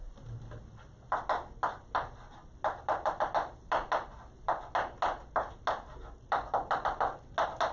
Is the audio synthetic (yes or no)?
no